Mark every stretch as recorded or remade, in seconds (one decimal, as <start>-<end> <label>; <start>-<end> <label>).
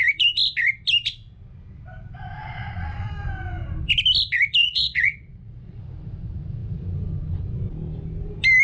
0.0-2.4 recorded; 2.4-3.1 remade; 3.1-4.6 recorded; 4.6-5.8 remade; 5.8-8.6 recorded